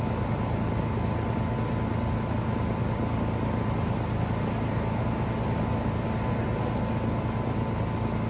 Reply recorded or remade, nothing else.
recorded